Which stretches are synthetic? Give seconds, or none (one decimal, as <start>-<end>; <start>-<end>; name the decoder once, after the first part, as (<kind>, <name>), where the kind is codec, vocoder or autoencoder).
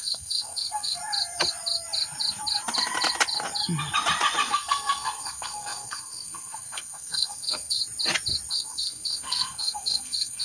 0.0-1.0 (codec, SNAC); 4.5-7.8; 8.5-10.4